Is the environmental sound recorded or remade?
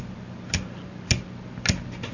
recorded